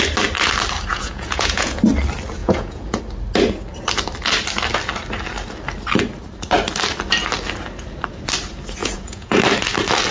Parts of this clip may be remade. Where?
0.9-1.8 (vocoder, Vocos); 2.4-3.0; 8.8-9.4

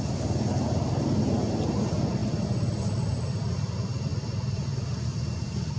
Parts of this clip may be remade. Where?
none

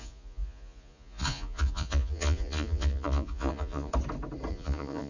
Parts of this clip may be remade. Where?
0.0-3.9 (vocoder, Vocos); 4.5-5.1

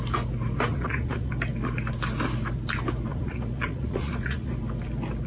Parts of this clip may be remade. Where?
0.7-1.3 (vocoder, Vocos); 3.1-4.5

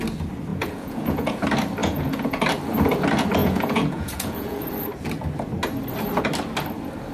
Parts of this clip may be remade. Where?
0.5-1.4 (vocoder, Vocos); 1.8-2.4; 3.4-4.7

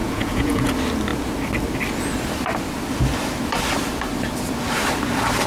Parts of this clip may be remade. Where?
0.0-0.7 (vocoder, Vocos)

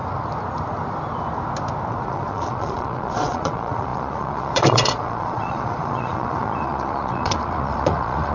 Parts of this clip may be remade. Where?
1.9-8.3 (vocoder, Vocos)

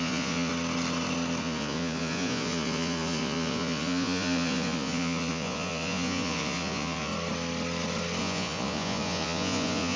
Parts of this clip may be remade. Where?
0.0-0.5 (vocoder, Vocos); 1.4-7.1; 8.2-10.0